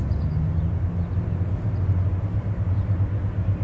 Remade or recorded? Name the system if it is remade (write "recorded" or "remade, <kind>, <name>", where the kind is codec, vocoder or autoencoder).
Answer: recorded